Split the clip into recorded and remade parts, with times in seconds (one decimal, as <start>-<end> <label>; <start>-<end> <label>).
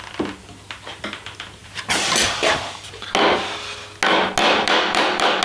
0.0-1.6 recorded; 1.6-2.6 remade; 2.6-4.4 recorded; 4.4-5.4 remade